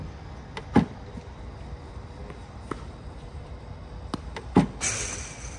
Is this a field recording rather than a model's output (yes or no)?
yes